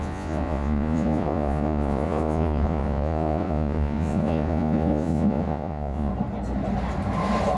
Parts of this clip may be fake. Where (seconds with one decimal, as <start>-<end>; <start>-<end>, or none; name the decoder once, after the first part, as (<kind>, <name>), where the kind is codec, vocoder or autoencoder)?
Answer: 0.0-6.1 (vocoder, Vocos)